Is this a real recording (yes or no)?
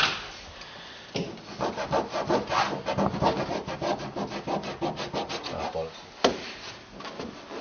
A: yes